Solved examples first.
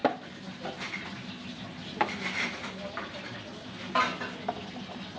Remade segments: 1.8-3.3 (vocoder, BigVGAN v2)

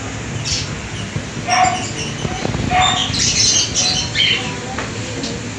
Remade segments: none

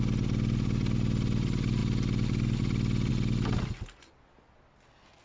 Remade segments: none